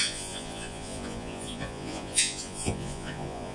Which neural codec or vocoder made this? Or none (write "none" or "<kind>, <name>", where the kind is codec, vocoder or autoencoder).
vocoder, Vocos